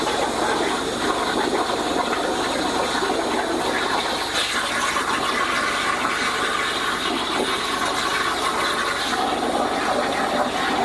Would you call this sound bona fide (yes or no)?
yes